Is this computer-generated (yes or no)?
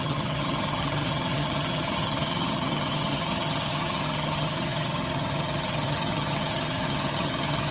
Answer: yes